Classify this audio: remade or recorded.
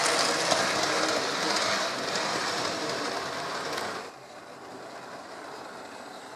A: recorded